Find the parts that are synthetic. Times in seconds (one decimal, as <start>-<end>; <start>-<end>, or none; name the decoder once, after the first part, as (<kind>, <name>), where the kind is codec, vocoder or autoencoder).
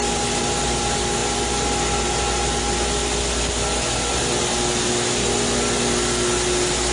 none